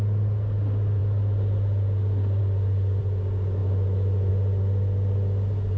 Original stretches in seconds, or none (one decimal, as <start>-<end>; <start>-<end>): 0.0-5.8

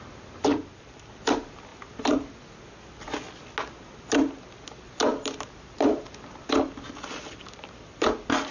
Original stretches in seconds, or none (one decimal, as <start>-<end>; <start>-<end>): 0.0-8.5

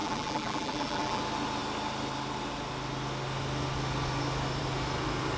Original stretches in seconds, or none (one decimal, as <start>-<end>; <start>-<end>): 1.2-5.4

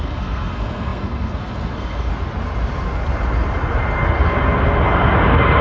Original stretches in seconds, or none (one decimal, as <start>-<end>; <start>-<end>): 2.1-5.6

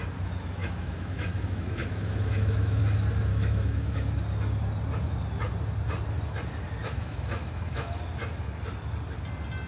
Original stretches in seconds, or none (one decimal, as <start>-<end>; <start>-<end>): 0.0-0.6; 2.8-3.3; 4.1-6.8; 8.0-9.7

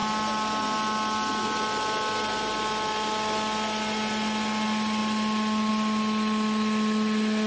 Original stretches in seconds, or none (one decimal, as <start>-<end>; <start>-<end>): 0.0-7.5

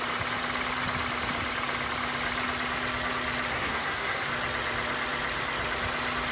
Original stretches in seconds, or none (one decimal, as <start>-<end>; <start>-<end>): 0.0-3.5; 4.3-6.3